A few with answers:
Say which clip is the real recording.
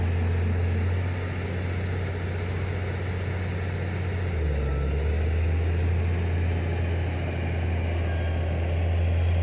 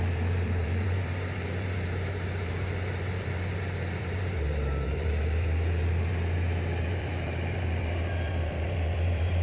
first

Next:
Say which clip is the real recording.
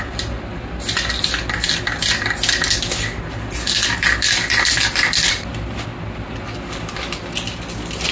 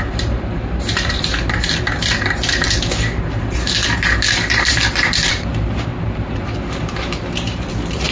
first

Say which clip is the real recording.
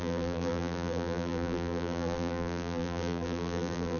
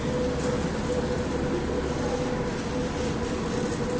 second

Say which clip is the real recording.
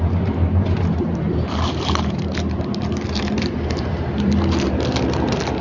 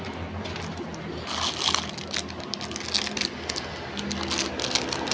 second